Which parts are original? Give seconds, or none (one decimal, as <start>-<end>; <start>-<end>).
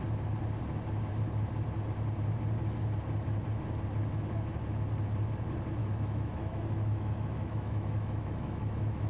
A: 0.0-5.8